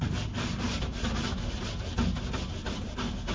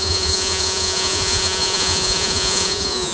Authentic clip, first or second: first